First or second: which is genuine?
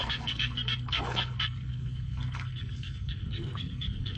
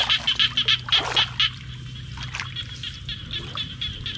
second